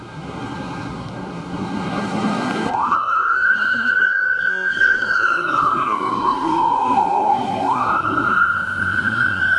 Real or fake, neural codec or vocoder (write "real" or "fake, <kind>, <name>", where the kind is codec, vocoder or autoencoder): fake, codec, SNAC